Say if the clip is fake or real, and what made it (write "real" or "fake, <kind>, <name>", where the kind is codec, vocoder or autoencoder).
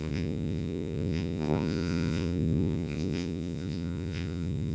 fake, vocoder, Vocos